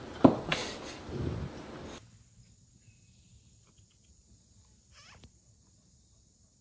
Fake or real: real